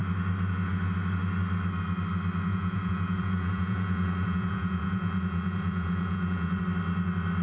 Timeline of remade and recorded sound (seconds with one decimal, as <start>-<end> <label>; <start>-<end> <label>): 0.0-2.5 recorded; 2.5-6.6 remade; 6.6-7.4 recorded